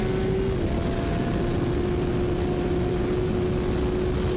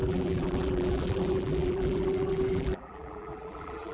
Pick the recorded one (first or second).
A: first